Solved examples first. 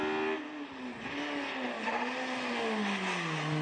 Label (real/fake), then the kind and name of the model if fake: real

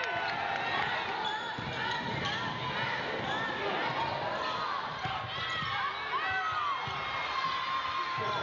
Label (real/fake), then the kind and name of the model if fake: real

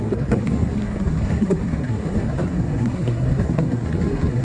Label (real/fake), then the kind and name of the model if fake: fake, codec, SNAC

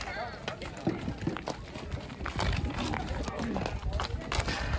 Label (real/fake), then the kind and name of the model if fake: real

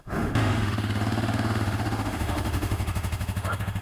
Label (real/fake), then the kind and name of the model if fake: fake, autoencoder, DAC-VAE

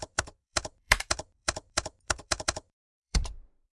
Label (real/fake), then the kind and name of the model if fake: fake, vocoder, BigVGAN v2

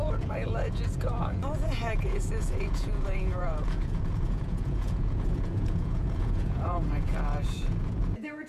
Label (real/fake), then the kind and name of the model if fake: fake, vocoder, Vocos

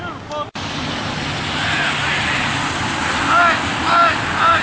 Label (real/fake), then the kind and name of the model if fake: real